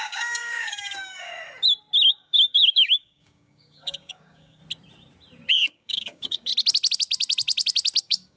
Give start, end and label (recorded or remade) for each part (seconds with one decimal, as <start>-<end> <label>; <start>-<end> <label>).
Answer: 0.0-1.3 remade; 1.3-2.1 recorded; 2.1-4.6 remade; 4.6-5.5 recorded; 5.5-6.5 remade; 6.5-8.0 recorded; 8.0-8.4 remade